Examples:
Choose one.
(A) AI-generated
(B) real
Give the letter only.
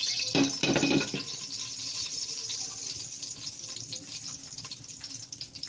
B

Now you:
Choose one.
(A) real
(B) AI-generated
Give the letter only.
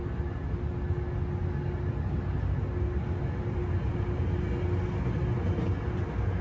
A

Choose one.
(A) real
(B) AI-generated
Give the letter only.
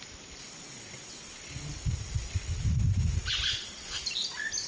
A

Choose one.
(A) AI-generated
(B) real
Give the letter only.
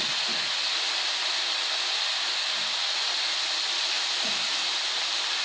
B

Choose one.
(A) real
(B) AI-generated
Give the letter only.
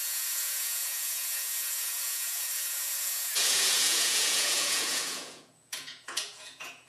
B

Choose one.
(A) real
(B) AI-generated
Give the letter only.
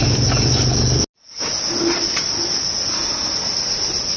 A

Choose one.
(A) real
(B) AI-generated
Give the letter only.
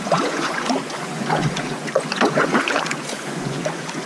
B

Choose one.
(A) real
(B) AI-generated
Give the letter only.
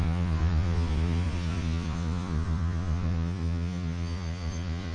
B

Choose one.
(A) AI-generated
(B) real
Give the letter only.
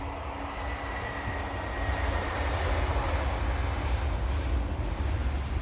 B